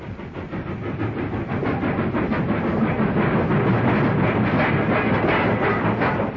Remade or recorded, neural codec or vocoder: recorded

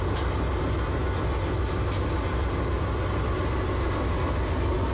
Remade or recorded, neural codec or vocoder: recorded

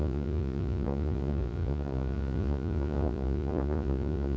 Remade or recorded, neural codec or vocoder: remade, vocoder, Vocos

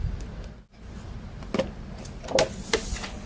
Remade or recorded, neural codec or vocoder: recorded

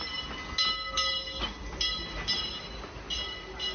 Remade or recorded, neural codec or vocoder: recorded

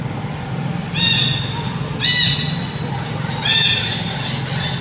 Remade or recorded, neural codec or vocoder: recorded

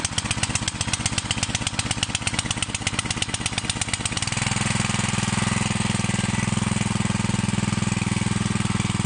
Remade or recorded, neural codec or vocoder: recorded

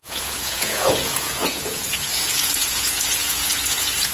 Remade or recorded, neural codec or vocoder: remade, vocoder, Vocos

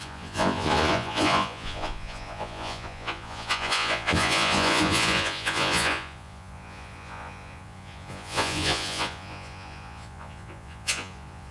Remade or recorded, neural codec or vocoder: remade, vocoder, Vocos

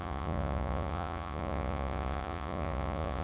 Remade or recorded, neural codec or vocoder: remade, vocoder, Vocos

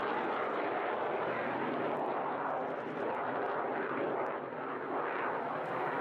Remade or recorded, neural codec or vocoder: recorded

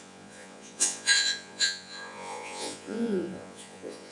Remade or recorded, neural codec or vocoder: remade, vocoder, Vocos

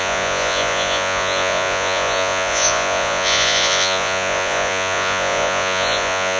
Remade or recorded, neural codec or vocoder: remade, vocoder, Vocos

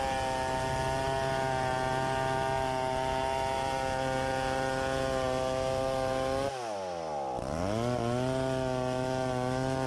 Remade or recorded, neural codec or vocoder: recorded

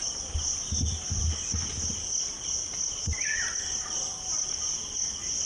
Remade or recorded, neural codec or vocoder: recorded